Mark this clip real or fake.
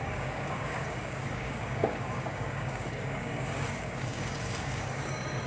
fake